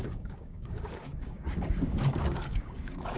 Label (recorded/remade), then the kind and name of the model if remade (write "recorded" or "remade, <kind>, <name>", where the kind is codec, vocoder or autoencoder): remade, codec, DAC